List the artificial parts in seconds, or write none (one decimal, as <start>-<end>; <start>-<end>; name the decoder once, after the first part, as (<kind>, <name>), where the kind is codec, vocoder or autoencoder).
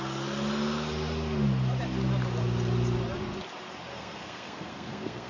3.9-5.3 (codec, SNAC)